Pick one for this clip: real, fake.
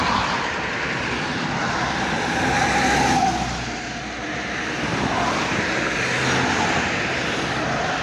real